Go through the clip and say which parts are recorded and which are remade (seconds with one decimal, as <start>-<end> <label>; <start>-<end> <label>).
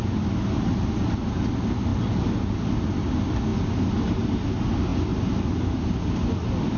0.0-6.8 recorded